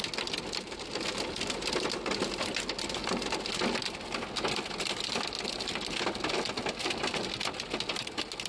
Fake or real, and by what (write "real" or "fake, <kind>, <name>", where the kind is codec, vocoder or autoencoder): real